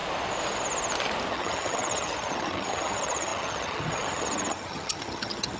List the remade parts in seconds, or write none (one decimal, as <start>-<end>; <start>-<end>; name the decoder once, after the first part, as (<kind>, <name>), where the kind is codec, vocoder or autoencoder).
1.3-5.6 (vocoder, HiFi-GAN)